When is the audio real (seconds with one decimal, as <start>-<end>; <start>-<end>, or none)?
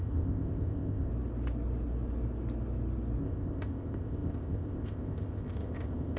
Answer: 1.1-3.2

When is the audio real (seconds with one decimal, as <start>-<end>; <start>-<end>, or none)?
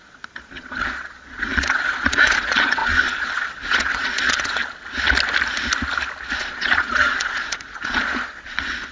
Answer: 4.6-6.3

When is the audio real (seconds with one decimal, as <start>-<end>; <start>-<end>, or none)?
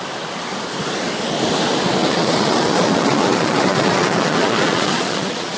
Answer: 0.0-2.0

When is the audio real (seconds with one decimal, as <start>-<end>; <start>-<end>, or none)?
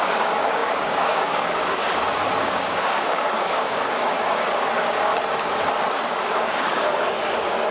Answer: 5.1-6.1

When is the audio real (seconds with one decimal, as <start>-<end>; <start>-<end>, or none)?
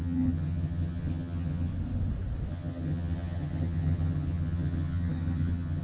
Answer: 1.7-2.5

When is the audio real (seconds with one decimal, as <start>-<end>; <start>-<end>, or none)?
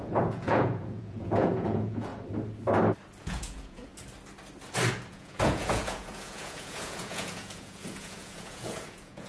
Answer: 2.1-3.2; 3.9-5.1